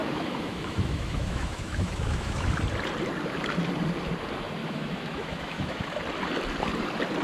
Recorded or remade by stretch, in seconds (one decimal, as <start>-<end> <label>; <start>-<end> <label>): 0.0-2.5 remade; 2.5-4.6 recorded; 4.6-6.0 remade; 6.0-7.2 recorded